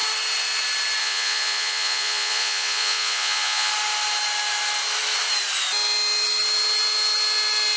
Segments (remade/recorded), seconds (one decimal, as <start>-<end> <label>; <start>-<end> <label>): 0.0-1.0 recorded; 1.0-3.7 remade; 3.7-7.8 recorded